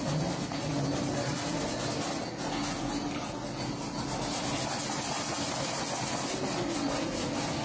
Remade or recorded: recorded